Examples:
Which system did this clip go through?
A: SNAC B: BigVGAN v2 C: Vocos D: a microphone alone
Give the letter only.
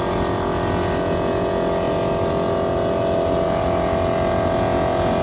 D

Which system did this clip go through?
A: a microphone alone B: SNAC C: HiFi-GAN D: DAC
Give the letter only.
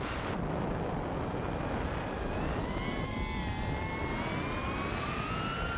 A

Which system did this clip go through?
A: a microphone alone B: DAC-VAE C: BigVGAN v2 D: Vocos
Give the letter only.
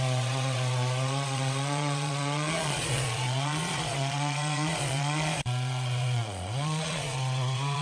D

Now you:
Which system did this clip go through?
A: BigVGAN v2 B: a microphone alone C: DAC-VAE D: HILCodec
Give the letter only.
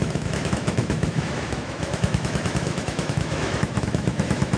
C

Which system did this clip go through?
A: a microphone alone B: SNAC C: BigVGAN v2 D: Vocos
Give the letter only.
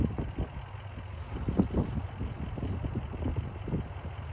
A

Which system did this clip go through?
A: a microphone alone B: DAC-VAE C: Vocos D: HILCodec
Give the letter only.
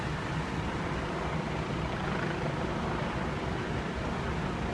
A